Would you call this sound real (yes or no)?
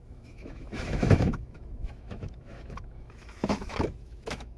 no